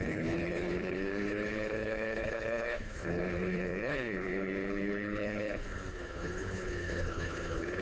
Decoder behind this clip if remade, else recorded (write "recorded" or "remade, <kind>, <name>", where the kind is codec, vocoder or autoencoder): remade, codec, HILCodec